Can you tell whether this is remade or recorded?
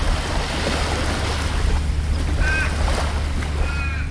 recorded